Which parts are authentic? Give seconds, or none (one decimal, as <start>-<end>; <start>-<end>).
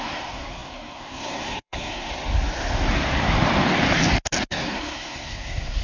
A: 2.1-4.5